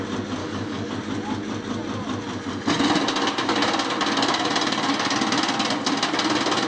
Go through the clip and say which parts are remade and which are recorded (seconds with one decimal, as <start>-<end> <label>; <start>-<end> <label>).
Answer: 0.0-0.4 recorded; 0.4-0.9 remade; 0.9-6.7 recorded